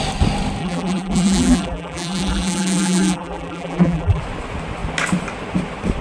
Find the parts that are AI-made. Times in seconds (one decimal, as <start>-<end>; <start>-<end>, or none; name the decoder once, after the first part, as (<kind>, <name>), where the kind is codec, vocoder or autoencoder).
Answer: 0.6-4.2 (vocoder, BigVGAN v2)